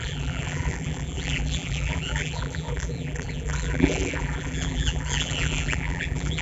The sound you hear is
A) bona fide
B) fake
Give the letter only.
B